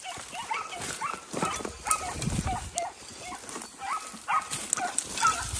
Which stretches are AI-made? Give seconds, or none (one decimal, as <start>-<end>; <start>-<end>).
none